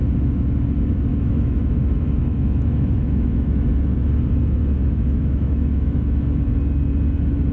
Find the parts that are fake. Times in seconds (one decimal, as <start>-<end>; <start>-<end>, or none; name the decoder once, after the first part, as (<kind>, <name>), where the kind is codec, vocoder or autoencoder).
1.1-3.7 (autoencoder, DAC-VAE); 4.8-6.2